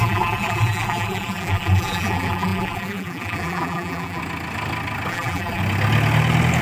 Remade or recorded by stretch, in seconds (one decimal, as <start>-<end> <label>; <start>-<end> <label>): 0.0-4.2 remade; 4.2-5.1 recorded; 5.1-5.6 remade; 5.6-6.6 recorded